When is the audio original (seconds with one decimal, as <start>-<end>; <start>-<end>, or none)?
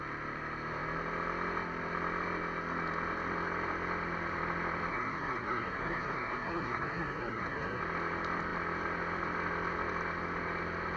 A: 0.0-4.9; 7.8-11.0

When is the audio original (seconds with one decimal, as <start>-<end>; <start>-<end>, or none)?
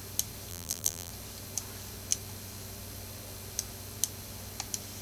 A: 0.0-0.5; 1.1-5.0